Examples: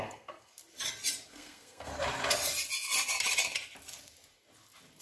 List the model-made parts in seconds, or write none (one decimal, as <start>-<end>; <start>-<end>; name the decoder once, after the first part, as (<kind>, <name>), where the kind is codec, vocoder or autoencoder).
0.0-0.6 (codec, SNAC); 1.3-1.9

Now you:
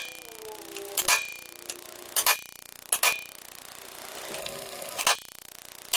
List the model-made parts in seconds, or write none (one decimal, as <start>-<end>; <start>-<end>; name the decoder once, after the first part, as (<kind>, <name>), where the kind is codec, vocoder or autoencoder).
4.4-5.0 (codec, SNAC)

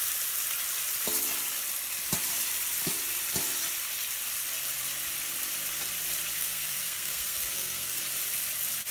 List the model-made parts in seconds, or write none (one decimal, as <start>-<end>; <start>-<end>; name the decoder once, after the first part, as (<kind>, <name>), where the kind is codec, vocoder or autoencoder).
6.3-8.0 (codec, SNAC)

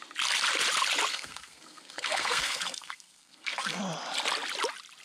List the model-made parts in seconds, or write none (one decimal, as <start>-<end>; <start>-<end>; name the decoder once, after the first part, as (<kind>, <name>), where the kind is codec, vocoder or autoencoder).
1.1-3.8 (codec, SNAC)

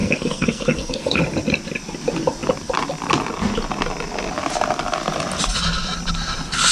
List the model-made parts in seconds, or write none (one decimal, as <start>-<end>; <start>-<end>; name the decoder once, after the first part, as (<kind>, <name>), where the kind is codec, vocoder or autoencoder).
0.0-1.2 (codec, SNAC)

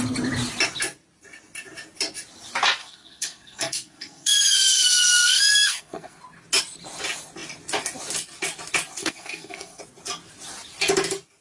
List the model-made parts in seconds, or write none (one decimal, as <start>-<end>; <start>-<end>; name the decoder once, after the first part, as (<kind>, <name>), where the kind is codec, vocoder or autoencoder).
2.8-6.2 (codec, SNAC); 9.0-9.8

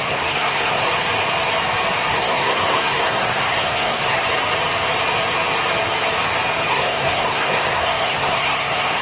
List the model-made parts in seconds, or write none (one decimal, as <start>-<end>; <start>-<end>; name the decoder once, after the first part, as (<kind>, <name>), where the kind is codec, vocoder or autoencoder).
0.0-0.9 (codec, SNAC); 2.1-4.2; 6.7-9.0

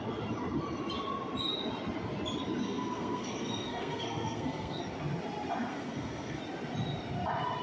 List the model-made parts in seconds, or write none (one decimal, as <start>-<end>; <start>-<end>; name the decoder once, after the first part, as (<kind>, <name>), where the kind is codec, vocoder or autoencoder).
2.6-4.8 (codec, SNAC); 5.7-6.4